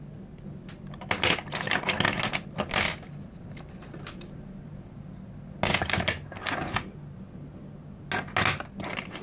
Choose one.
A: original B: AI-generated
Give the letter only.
A